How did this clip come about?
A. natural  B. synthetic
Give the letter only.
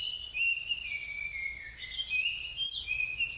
A